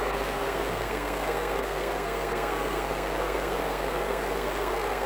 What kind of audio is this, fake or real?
fake